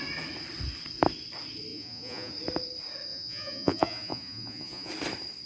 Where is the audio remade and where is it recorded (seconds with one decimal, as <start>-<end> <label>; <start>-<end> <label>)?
0.0-1.7 recorded; 1.7-2.3 remade; 2.3-3.1 recorded; 3.1-4.9 remade; 4.9-5.5 recorded